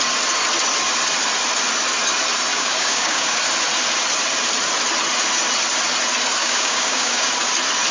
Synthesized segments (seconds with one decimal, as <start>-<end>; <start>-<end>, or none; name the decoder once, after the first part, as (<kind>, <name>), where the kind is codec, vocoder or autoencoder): 2.5-3.4 (codec, DAC); 6.4-7.3